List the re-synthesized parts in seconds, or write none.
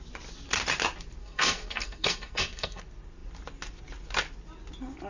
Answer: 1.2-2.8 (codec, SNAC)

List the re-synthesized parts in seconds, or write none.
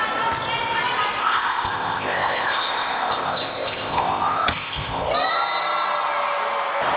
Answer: 1.2-5.1 (codec, ZipCodec)